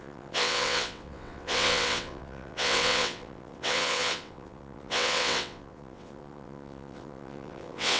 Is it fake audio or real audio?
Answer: fake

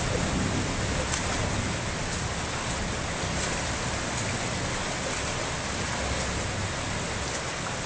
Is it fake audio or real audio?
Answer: real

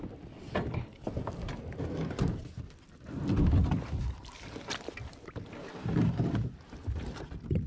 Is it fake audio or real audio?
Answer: real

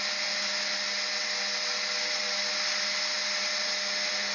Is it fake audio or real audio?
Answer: real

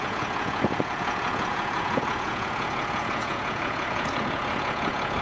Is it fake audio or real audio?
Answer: fake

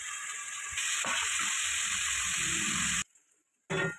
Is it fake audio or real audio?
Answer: real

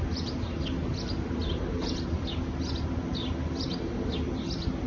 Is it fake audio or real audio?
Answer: real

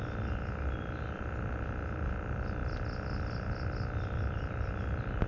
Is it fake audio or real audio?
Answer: real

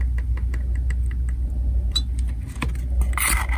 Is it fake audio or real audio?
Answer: real